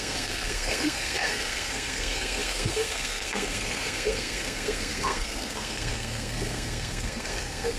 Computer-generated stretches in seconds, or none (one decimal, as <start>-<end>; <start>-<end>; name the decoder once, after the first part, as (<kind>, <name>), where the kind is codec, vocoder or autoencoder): 0.0-7.8 (codec, SNAC)